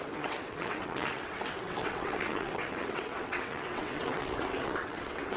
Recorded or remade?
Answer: remade